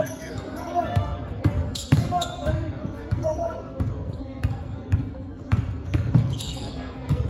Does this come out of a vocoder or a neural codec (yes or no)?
yes